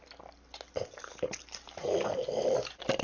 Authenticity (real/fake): real